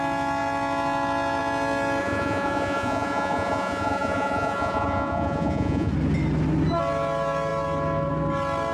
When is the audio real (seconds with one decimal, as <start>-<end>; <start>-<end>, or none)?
0.0-2.0; 5.9-8.7